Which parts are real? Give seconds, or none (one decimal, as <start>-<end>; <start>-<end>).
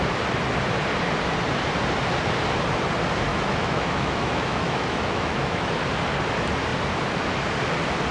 0.0-3.3; 5.7-8.1